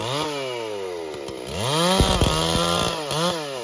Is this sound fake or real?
real